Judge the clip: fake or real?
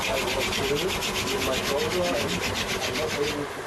real